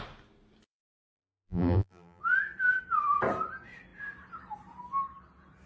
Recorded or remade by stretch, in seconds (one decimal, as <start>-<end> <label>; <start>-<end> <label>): 0.0-0.9 recorded; 0.9-2.2 remade; 2.2-5.7 recorded